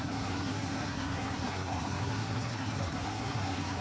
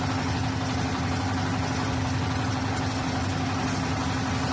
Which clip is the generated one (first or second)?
first